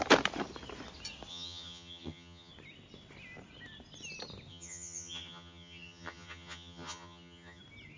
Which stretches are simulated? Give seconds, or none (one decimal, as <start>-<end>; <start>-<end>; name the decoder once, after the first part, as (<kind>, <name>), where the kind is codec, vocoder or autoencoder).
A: 1.3-2.5 (vocoder, HiFi-GAN); 4.5-7.6